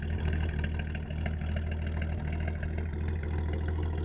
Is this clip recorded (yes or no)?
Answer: yes